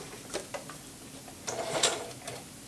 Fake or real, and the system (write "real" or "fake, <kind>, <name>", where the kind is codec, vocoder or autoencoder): real